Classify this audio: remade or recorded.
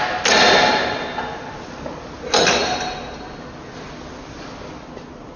recorded